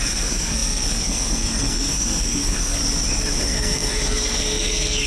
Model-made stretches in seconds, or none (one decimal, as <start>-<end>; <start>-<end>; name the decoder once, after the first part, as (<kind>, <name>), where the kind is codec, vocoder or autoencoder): 0.0-2.8 (codec, SNAC); 3.4-5.1